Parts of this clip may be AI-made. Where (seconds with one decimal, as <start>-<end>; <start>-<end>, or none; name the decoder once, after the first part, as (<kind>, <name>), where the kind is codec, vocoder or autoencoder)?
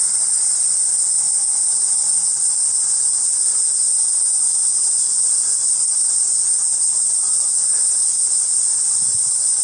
none